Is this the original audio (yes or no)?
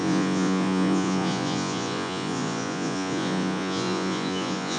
no